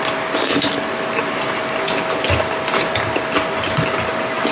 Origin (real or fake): real